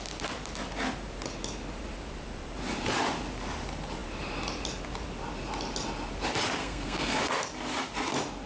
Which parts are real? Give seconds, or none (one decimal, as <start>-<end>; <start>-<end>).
0.0-6.6; 7.2-8.5

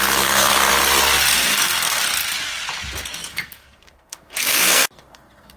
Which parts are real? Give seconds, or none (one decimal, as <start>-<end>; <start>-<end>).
0.7-1.3; 2.0-3.3

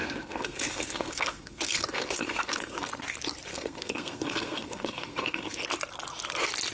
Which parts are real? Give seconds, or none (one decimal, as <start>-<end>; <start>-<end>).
2.9-3.5; 5.6-6.7

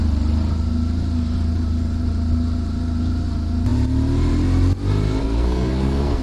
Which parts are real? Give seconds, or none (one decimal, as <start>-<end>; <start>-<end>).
0.0-5.2

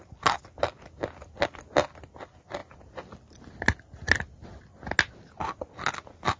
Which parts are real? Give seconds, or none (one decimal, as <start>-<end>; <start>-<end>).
0.0-6.4

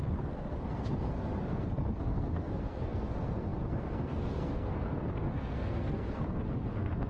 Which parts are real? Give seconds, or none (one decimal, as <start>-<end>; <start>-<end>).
none

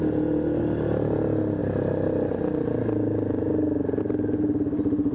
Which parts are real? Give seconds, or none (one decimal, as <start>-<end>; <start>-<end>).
0.0-5.1

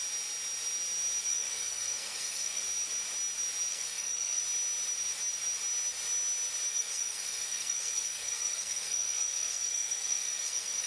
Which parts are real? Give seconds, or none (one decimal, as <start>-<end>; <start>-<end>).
0.0-1.3; 2.6-3.7; 4.4-6.7